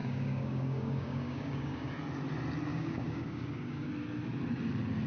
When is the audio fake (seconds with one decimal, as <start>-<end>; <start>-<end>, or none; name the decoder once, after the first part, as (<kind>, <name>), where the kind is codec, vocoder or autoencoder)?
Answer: 0.0-1.9 (codec, DAC); 2.7-3.9